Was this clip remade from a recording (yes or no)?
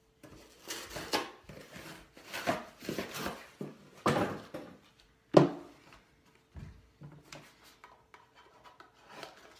no